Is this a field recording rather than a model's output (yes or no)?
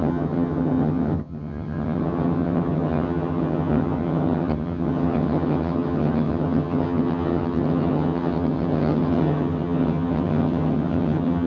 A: no